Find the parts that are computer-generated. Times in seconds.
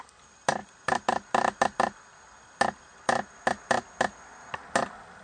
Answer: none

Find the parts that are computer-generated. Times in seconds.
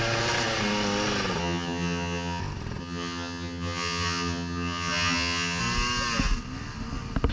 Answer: 1.4-2.4 (vocoder, HiFi-GAN); 2.8-5.6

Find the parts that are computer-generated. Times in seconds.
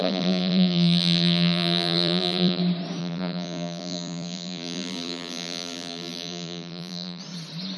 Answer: 0.0-2.6 (vocoder, BigVGAN v2); 3.0-7.2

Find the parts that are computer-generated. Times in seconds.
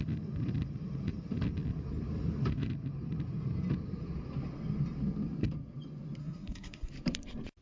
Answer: 6.2-6.9 (codec, SNAC)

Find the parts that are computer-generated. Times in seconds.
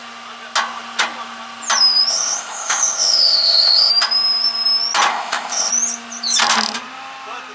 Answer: 2.1-3.9 (codec, ZipCodec); 5.1-5.7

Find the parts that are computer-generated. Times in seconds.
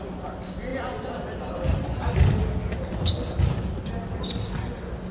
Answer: none